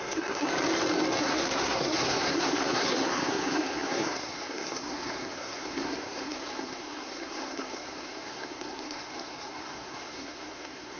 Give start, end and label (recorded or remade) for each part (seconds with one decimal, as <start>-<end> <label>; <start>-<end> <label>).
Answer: 0.0-0.5 remade; 0.5-1.2 recorded; 1.2-11.0 remade